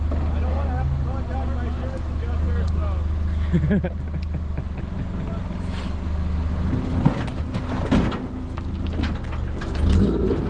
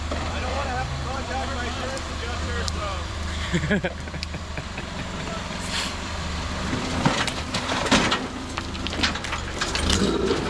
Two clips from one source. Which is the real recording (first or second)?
first